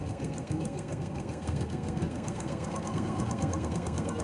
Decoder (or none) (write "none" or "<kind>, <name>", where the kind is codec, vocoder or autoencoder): codec, SNAC